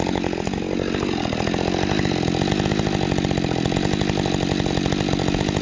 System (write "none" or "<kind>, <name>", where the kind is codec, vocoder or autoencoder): none